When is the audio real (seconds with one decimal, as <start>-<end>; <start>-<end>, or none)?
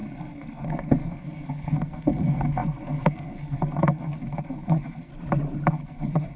5.1-5.7